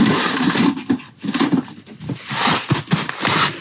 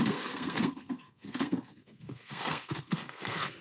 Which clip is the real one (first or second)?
first